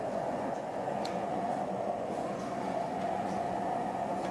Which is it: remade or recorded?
remade